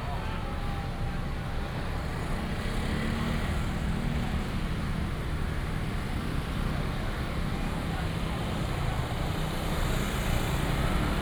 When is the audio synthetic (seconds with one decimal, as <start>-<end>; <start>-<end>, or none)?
none